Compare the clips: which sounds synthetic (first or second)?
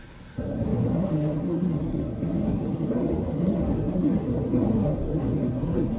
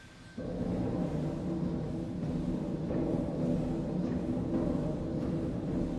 first